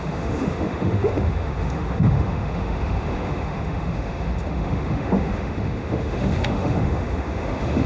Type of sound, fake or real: fake